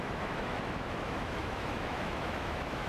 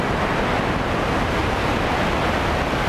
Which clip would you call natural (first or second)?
second